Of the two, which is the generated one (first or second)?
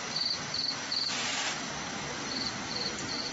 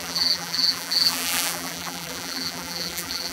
second